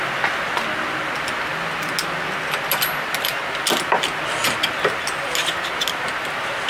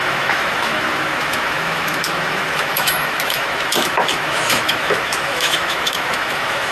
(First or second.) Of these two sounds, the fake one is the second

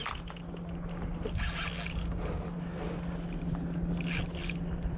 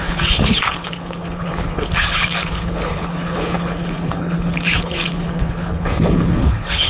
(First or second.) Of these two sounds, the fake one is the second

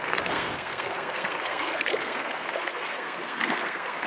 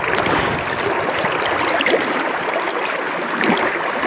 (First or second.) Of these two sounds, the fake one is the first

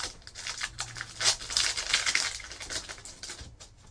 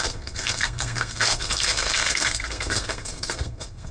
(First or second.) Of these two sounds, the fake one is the second